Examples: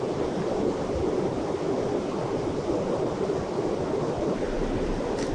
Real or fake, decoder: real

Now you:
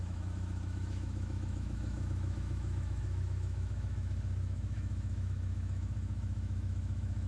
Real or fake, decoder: fake, autoencoder, DAC-VAE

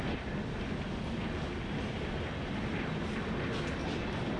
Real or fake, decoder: real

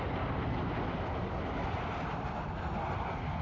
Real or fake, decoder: real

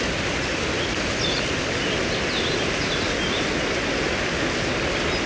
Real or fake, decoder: real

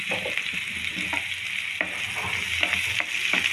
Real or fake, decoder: real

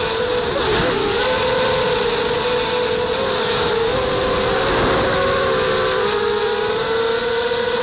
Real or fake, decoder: real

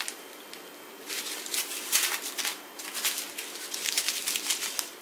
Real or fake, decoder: real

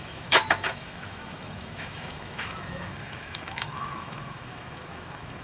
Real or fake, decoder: fake, autoencoder, DAC-VAE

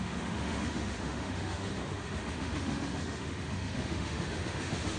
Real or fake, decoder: fake, autoencoder, DAC-VAE